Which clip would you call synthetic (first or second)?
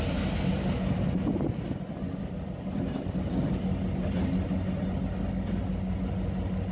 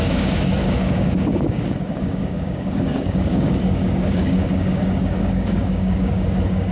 second